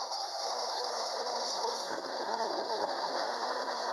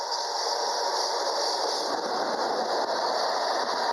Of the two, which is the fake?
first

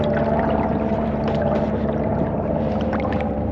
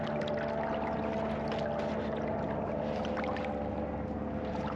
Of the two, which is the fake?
first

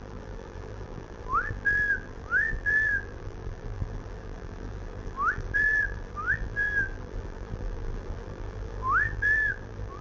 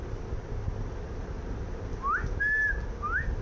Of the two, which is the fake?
first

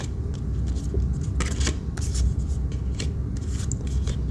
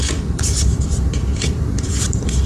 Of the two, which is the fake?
second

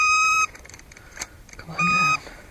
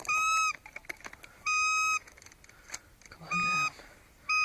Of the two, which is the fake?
first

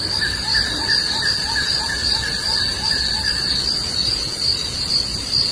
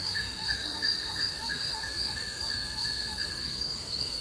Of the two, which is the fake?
second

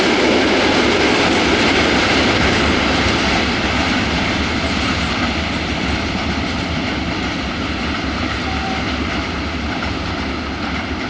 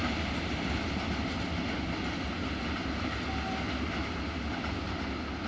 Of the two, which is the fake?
first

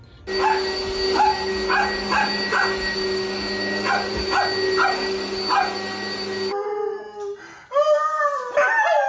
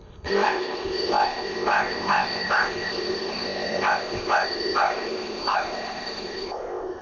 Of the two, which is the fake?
second